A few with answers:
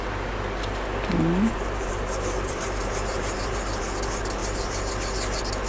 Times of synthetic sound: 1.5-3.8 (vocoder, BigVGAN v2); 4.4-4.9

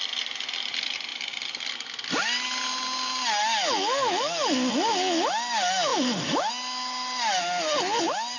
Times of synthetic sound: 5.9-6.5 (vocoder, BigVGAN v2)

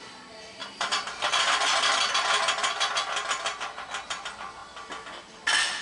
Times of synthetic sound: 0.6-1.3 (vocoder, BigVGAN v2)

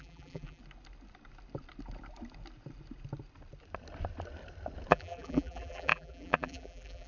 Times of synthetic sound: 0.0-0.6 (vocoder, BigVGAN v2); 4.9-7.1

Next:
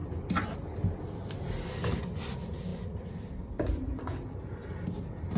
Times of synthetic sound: none